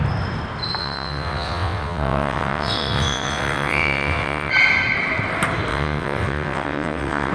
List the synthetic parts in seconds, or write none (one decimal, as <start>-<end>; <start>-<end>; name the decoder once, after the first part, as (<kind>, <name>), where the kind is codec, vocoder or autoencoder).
0.8-4.5 (vocoder, WaveNeXt); 5.7-7.3